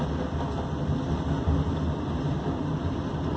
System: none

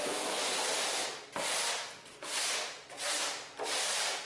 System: none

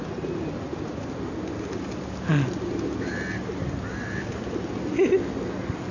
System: none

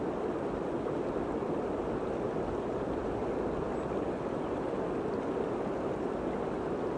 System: none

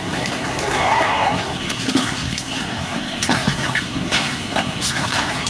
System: codec, SNAC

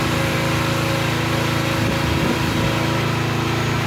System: none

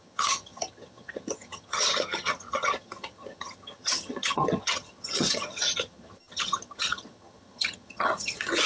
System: vocoder, HiFi-GAN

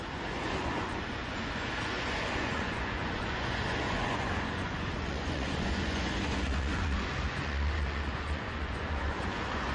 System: vocoder, Vocos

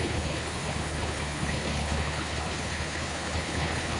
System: codec, HILCodec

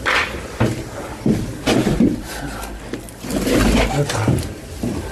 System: none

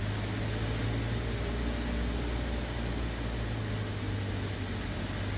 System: none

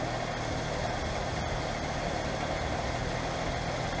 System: none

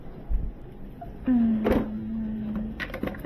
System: none